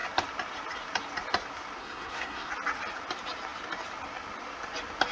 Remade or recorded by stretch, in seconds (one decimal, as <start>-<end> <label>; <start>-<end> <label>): 0.0-1.8 recorded; 1.8-2.5 remade; 2.5-5.1 recorded